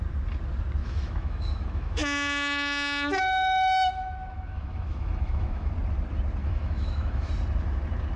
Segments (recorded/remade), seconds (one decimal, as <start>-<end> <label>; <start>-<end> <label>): 0.0-0.8 recorded; 0.8-5.7 remade; 5.7-6.4 recorded; 6.4-7.3 remade; 7.3-8.2 recorded